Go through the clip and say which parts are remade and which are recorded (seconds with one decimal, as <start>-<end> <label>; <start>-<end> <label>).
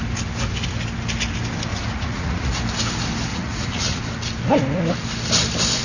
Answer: 0.0-1.7 recorded; 1.7-2.5 remade; 2.5-3.3 recorded; 3.3-4.0 remade; 4.0-5.8 recorded